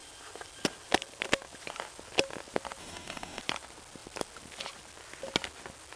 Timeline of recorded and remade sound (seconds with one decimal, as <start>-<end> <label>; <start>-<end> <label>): 0.0-2.8 recorded; 2.8-3.4 remade; 3.4-6.0 recorded